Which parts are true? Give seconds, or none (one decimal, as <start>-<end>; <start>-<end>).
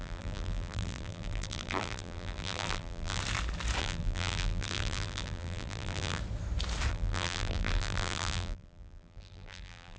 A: 3.2-3.8; 6.2-6.9